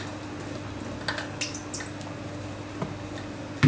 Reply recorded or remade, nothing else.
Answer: recorded